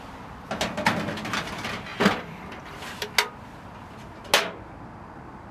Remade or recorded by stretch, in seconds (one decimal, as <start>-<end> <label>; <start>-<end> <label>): 0.0-5.5 recorded